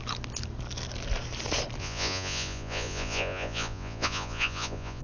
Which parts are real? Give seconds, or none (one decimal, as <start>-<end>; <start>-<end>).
0.0-1.8